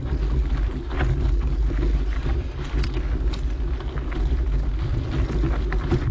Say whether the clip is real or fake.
real